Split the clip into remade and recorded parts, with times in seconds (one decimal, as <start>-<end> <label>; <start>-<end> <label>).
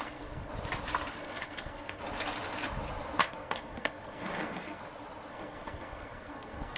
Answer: 0.0-0.5 remade; 0.5-1.1 recorded; 1.1-2.0 remade; 2.0-3.2 recorded; 3.2-4.8 remade; 4.8-5.3 recorded; 5.3-6.8 remade